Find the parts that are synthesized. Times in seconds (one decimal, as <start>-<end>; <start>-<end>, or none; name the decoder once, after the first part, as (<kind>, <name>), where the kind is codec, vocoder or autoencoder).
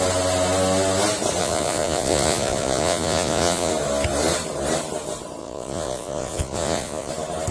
1.4-3.7 (vocoder, Vocos); 5.4-7.1